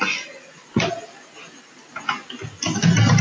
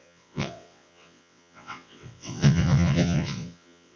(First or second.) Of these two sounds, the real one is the first